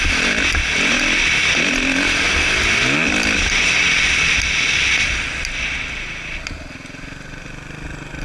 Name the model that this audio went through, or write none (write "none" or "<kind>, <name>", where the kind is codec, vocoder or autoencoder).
none